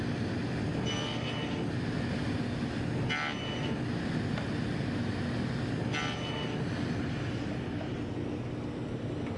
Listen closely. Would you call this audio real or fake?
real